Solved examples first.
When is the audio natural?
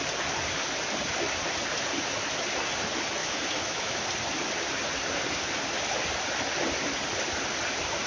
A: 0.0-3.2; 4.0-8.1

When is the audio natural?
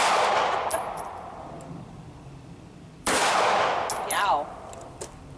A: 3.2-5.4